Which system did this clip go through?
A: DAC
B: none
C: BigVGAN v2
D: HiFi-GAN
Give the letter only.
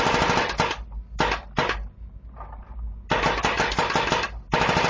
B